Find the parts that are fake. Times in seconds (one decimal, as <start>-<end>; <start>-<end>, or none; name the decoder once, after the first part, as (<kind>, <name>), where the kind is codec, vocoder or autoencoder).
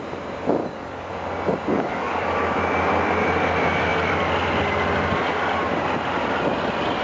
0.6-1.1 (codec, DAC); 1.7-2.6